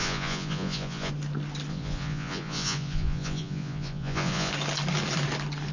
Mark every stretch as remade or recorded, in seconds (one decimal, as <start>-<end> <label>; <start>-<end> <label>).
0.0-1.1 remade; 1.1-1.7 recorded; 1.7-4.5 remade; 4.5-5.7 recorded